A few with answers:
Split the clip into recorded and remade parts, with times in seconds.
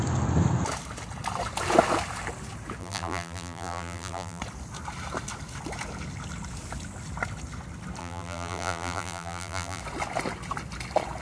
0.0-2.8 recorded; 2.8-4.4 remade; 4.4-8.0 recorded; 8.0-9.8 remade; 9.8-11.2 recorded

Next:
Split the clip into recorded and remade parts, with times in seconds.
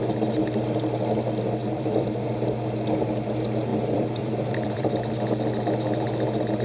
0.0-1.6 recorded; 1.6-2.1 remade; 2.1-3.7 recorded; 3.7-5.1 remade; 5.1-6.6 recorded